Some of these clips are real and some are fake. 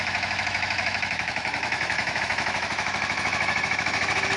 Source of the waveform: fake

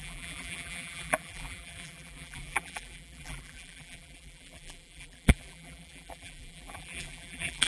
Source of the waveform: fake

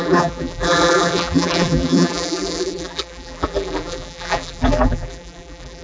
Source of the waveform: fake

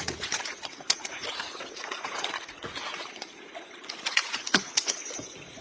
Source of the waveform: fake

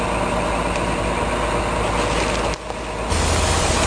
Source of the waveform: real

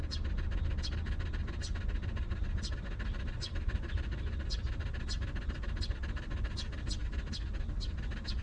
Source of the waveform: real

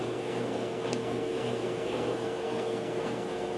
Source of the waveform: fake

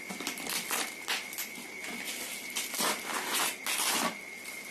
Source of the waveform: real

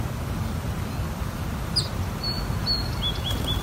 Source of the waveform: real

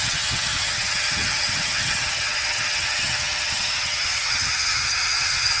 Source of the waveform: fake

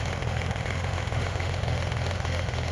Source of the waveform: fake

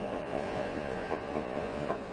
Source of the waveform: fake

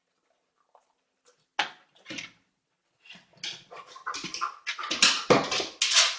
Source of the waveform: real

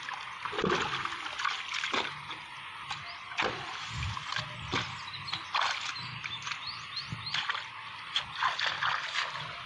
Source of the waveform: real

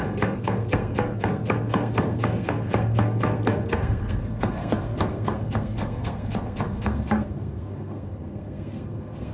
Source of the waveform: fake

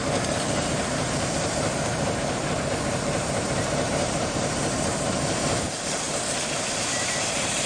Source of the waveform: fake